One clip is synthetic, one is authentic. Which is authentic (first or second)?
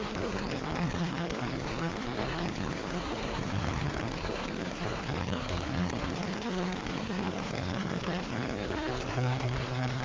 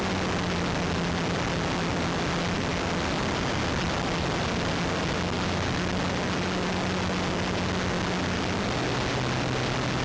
second